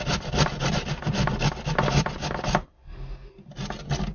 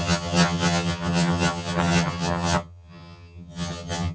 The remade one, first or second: second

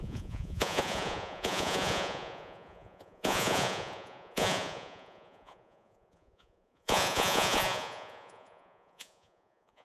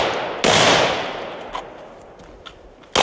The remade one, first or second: first